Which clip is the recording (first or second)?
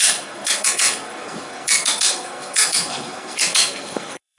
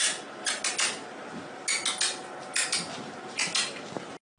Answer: second